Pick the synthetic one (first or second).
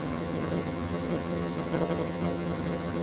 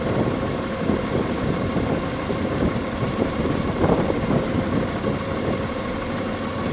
first